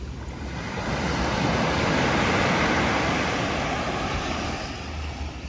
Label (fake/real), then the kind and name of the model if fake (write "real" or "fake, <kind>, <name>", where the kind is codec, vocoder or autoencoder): real